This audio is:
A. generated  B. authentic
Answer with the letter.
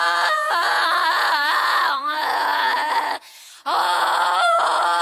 A